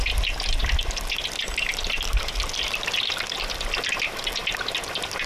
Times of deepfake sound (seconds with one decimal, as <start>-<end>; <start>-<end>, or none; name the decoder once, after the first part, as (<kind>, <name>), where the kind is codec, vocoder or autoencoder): none